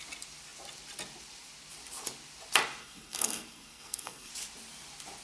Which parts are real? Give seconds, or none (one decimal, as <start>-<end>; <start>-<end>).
0.0-2.8; 4.3-5.2

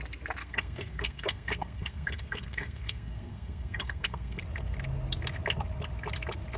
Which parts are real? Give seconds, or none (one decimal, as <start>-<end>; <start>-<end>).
0.0-0.4; 4.4-6.6

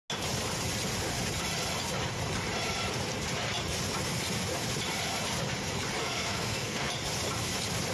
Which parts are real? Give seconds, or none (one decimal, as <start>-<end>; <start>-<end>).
0.0-6.0; 6.9-7.9